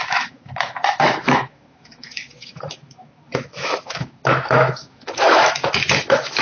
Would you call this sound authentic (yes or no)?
no